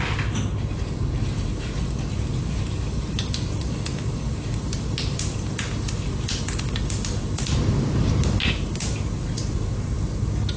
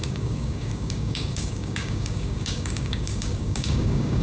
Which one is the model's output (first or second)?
second